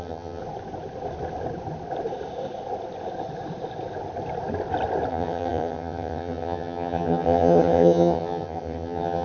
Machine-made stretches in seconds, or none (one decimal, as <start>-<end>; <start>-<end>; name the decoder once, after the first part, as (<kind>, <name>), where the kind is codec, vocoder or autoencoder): 0.0-0.4 (vocoder, HiFi-GAN); 5.1-9.2